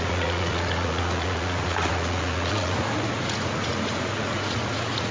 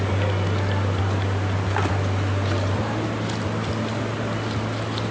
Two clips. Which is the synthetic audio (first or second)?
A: first